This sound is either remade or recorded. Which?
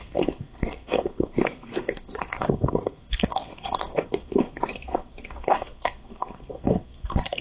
remade